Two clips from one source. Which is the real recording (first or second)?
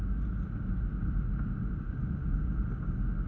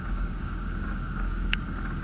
first